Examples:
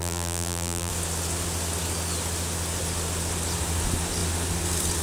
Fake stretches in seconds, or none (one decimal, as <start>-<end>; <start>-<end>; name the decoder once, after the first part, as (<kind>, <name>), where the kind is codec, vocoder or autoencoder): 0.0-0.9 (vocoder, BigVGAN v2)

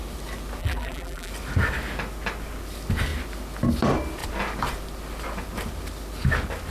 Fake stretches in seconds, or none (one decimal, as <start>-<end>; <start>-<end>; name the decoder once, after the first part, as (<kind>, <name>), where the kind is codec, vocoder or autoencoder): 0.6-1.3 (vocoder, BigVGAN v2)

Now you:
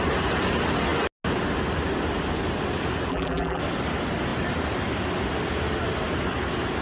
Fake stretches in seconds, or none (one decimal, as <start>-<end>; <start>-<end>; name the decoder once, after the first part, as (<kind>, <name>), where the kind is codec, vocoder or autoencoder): 3.1-3.6 (vocoder, BigVGAN v2)